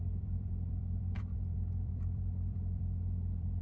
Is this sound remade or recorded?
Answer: remade